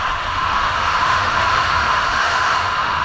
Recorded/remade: remade